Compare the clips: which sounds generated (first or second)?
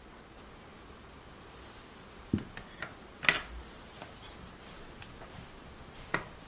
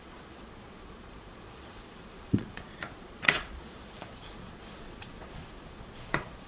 second